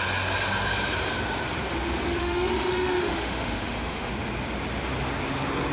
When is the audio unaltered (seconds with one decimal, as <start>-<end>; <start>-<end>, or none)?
0.0-2.2; 4.1-5.7